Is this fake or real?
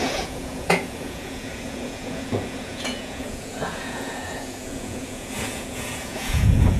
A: fake